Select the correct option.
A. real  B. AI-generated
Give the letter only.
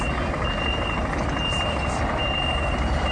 B